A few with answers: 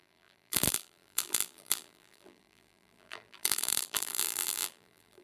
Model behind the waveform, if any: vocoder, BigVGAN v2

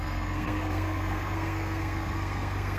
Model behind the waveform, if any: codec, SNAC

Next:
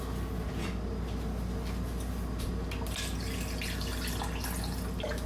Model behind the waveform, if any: none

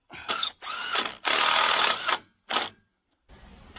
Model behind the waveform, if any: none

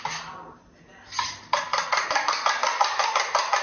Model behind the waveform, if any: none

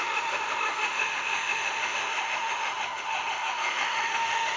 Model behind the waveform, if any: autoencoder, DAC-VAE